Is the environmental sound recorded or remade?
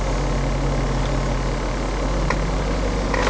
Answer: recorded